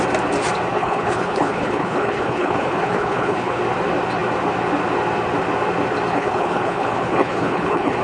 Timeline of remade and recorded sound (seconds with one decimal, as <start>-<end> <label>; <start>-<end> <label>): 0.0-0.7 recorded; 0.7-3.6 remade; 3.6-6.1 recorded; 6.1-8.0 remade